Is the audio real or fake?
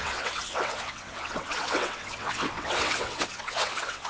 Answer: fake